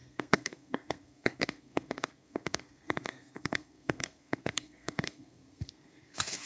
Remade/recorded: remade